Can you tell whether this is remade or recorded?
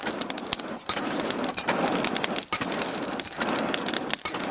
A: recorded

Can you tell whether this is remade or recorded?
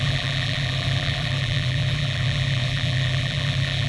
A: remade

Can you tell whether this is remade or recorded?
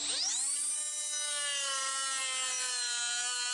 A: recorded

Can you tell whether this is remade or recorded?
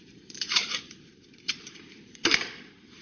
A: remade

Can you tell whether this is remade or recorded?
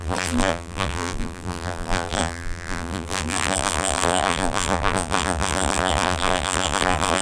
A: remade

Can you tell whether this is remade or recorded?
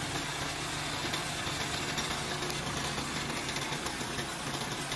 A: recorded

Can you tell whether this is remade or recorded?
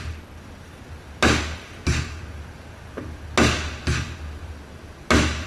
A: recorded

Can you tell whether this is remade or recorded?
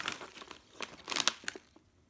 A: recorded